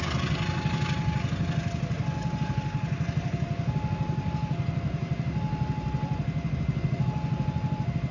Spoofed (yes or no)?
no